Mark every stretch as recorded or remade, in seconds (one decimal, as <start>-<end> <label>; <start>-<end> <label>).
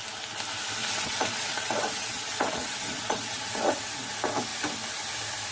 0.0-0.8 recorded; 0.8-4.1 remade; 4.1-5.5 recorded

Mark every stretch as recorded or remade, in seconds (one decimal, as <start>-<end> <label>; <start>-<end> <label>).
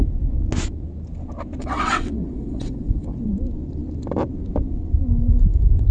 0.0-1.6 recorded; 1.6-3.3 remade; 3.3-5.9 recorded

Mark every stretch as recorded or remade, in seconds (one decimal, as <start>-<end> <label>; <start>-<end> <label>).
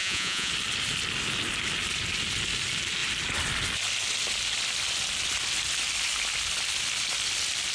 0.0-0.5 remade; 0.5-7.7 recorded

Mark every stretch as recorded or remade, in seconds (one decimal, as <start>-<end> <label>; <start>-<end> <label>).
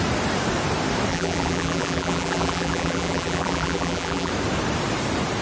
0.0-1.1 recorded; 1.1-4.3 remade; 4.3-5.4 recorded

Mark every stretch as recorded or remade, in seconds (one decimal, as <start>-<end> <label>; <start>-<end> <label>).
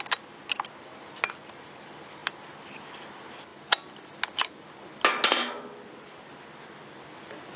0.0-7.6 recorded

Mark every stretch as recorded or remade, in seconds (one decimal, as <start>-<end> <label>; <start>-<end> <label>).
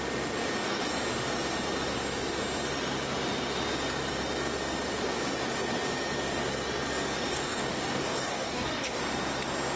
0.0-7.3 recorded; 7.3-9.0 remade; 9.0-9.8 recorded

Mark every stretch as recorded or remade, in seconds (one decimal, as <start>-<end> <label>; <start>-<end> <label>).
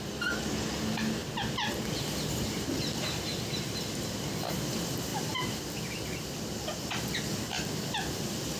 0.0-1.2 recorded; 1.2-4.5 remade; 4.5-5.1 recorded; 5.1-5.6 remade; 5.6-8.6 recorded